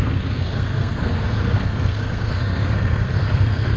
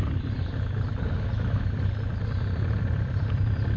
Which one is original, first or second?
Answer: second